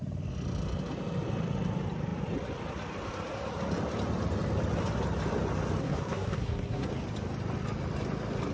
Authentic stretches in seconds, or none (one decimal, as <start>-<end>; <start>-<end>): 0.0-5.8; 6.9-8.5